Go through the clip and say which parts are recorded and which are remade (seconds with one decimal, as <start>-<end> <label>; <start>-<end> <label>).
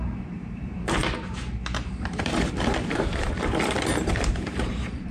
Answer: 0.0-5.1 remade